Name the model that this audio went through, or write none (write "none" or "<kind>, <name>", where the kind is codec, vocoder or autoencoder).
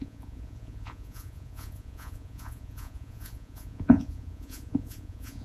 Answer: vocoder, Vocos